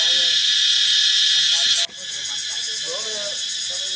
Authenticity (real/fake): real